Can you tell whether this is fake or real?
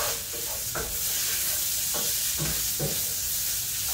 real